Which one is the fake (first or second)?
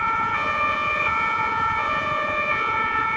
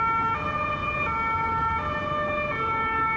first